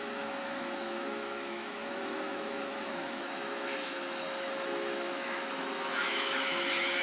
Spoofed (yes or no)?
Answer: yes